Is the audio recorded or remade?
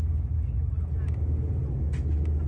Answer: recorded